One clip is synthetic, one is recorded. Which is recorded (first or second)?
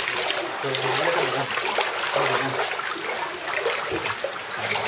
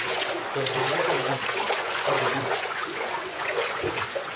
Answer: first